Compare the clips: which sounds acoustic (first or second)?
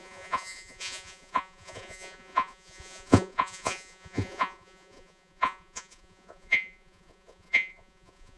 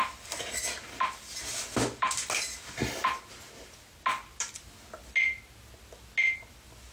second